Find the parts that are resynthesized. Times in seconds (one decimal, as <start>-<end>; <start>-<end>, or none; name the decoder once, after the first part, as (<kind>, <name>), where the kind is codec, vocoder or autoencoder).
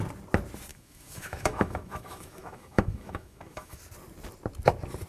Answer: 0.7-3.8 (autoencoder, DAC-VAE)